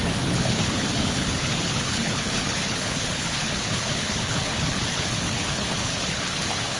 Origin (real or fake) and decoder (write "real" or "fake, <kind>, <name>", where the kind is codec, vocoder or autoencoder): fake, codec, HILCodec